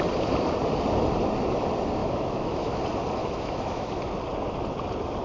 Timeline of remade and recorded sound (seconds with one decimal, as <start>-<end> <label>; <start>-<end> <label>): 0.0-2.0 recorded; 2.0-2.8 remade; 2.8-3.2 recorded; 3.2-3.9 remade; 3.9-5.2 recorded